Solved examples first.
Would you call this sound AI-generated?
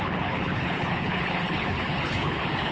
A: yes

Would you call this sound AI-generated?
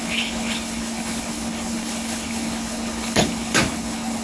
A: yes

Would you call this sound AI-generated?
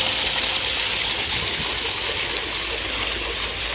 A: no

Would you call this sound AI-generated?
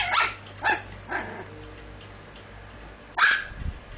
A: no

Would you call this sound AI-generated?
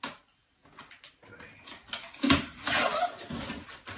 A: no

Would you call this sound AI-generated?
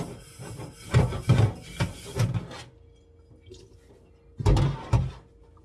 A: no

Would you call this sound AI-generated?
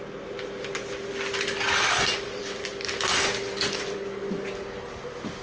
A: no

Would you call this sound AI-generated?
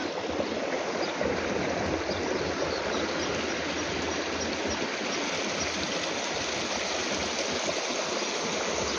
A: no